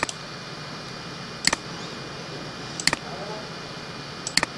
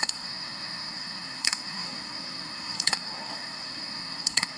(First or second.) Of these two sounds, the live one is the first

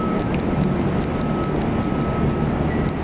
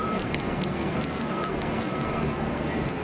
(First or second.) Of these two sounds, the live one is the first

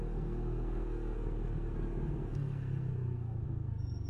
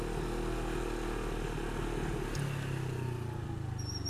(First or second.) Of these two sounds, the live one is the second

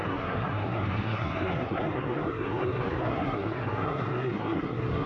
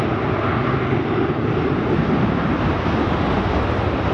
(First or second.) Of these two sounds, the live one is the second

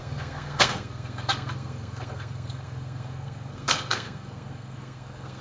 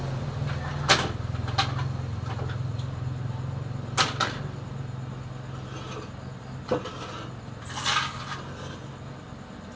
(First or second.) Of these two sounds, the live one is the second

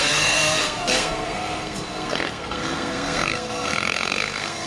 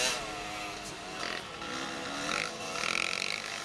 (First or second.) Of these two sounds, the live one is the second